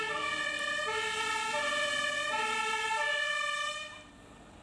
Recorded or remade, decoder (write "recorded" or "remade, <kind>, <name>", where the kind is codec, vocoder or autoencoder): recorded